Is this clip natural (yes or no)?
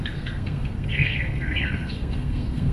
no